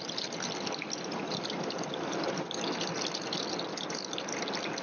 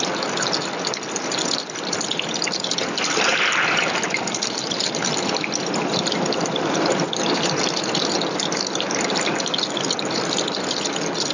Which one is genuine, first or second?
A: first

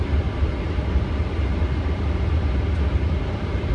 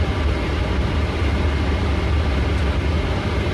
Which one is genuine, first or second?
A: second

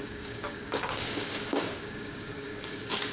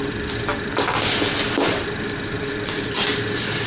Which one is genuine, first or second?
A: second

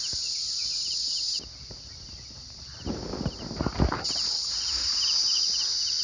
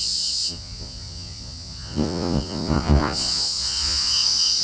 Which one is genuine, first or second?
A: first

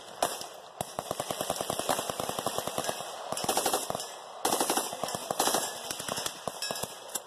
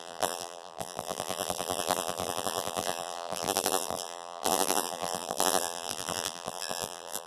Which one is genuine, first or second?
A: first